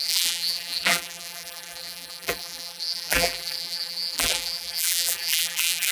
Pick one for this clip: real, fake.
fake